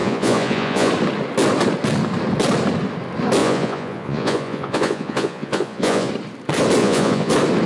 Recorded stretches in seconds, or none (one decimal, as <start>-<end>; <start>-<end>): 0.9-3.4; 6.1-6.8; 7.3-7.7